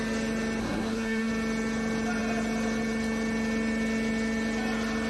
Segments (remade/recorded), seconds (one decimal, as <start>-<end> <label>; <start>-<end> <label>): 0.0-0.6 recorded; 0.6-1.3 remade; 1.3-5.1 recorded